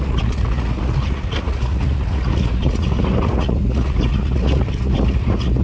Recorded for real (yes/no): no